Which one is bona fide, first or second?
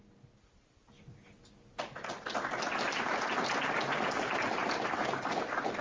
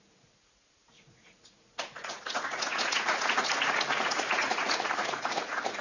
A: first